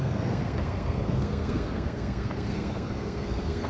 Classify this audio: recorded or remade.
remade